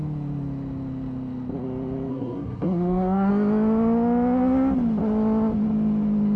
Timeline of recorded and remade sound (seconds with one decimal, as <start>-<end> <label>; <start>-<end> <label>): 0.0-2.1 recorded; 2.1-3.3 remade; 3.3-6.4 recorded